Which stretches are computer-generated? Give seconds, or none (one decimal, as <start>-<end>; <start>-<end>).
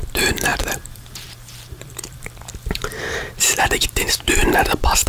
0.0-5.1